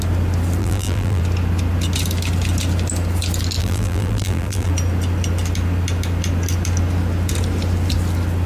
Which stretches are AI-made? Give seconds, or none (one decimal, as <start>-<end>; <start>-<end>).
0.6-1.2; 3.6-4.7